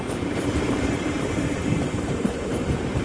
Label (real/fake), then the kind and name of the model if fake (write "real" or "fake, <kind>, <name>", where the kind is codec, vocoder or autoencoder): fake, vocoder, BigVGAN v2